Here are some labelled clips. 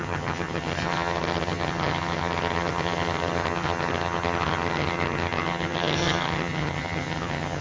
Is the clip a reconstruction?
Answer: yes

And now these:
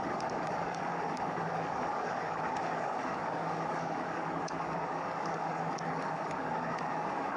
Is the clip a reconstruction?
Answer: yes